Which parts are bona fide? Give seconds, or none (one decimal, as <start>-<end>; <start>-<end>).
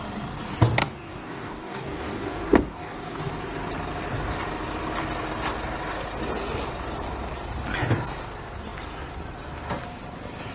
0.0-0.8; 3.3-10.5